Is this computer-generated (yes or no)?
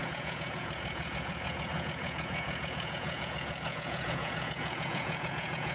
yes